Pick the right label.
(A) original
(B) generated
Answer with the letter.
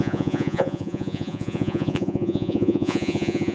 B